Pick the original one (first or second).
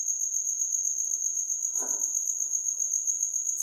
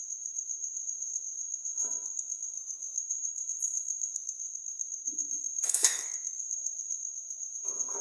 first